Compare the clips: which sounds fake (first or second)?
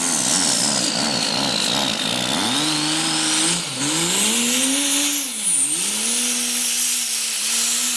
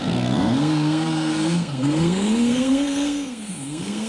second